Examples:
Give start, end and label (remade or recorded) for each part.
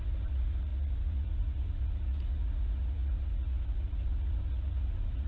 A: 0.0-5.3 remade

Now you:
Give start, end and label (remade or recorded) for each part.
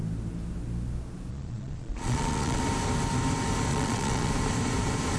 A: 0.0-1.3 recorded; 1.3-2.6 remade; 2.6-3.7 recorded; 3.7-4.3 remade; 4.3-5.2 recorded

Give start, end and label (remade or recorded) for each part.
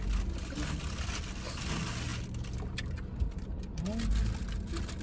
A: 0.0-5.0 recorded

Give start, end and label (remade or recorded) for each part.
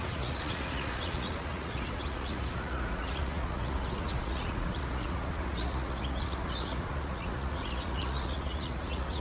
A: 0.0-9.2 remade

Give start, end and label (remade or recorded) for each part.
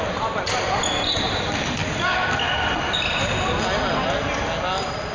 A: 0.0-5.1 recorded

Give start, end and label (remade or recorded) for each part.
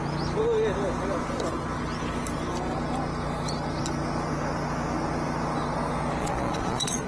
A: 0.0-6.2 recorded; 6.2-7.1 remade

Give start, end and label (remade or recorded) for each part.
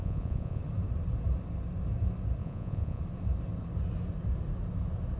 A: 0.0-0.6 remade; 0.6-2.4 recorded; 2.4-3.0 remade; 3.0-5.2 recorded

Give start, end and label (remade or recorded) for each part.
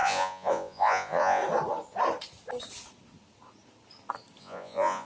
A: 0.0-1.4 remade; 1.4-4.4 recorded; 4.4-5.0 remade